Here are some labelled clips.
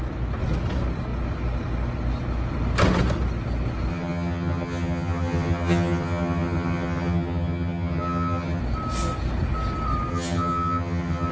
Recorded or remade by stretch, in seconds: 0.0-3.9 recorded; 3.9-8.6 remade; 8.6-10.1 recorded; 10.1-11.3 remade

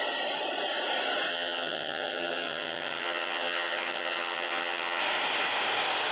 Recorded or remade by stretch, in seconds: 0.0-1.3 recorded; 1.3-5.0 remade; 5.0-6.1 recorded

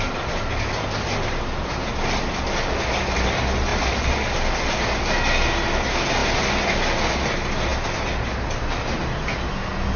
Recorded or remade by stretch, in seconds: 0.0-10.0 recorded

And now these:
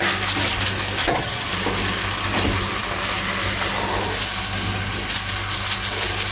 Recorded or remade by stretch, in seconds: 0.0-1.0 recorded; 1.0-1.5 remade; 1.5-6.3 recorded

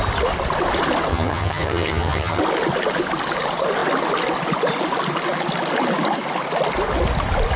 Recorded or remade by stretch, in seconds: 0.0-1.1 recorded; 1.1-2.4 remade; 2.4-7.6 recorded